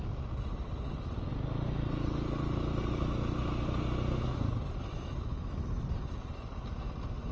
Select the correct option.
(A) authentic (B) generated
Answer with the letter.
A